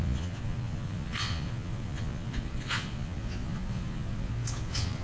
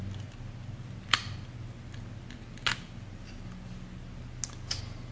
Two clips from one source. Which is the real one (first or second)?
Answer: second